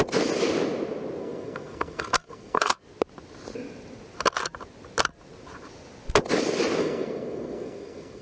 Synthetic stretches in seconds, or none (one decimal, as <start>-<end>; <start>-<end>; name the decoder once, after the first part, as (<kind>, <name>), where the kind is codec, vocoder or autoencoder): 1.2-2.8 (codec, SNAC); 6.8-8.2